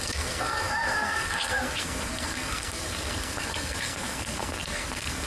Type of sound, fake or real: fake